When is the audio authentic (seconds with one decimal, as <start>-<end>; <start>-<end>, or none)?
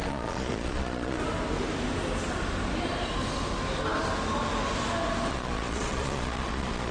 1.2-5.3